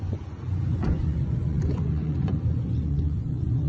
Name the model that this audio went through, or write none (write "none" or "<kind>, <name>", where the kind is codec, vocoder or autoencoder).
vocoder, Vocos